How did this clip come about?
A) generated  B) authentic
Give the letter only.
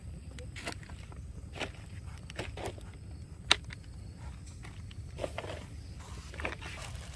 B